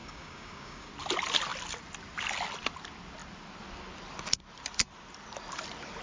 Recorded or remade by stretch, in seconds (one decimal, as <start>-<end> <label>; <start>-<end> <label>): 0.0-0.9 remade; 0.9-6.0 recorded